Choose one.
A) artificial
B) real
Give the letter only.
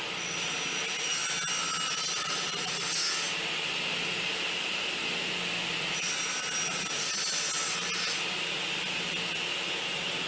B